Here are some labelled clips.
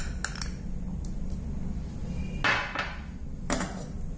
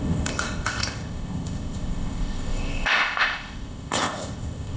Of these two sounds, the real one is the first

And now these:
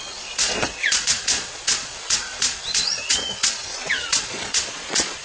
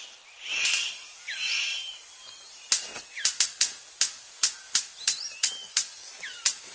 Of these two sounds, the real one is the second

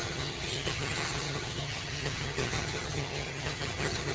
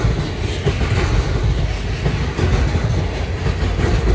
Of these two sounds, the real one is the second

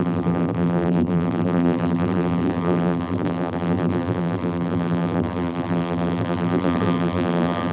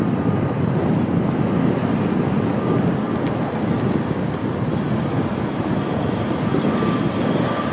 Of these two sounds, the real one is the second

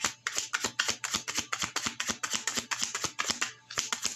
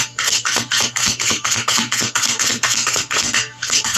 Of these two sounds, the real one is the first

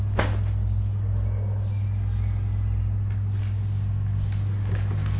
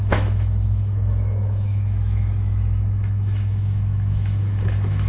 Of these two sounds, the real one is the first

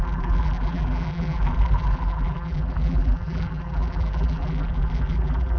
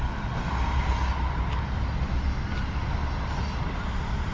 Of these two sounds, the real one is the second